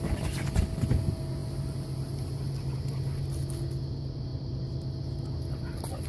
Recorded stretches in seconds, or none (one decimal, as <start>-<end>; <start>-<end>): 0.0-6.1